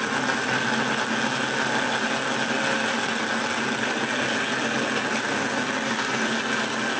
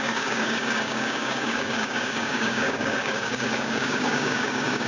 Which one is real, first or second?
first